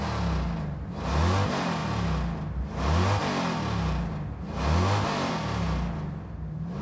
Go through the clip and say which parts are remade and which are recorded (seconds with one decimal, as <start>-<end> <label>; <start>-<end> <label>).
0.0-6.8 recorded